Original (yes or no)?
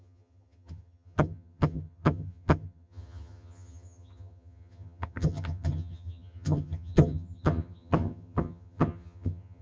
no